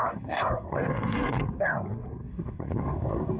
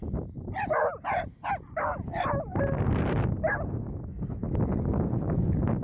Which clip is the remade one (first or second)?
first